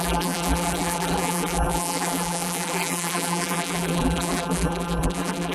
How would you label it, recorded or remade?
remade